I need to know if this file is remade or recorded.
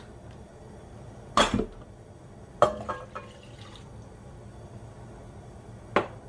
recorded